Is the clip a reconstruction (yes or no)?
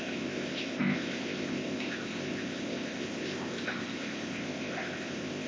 yes